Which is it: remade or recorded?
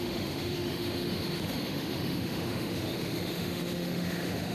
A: remade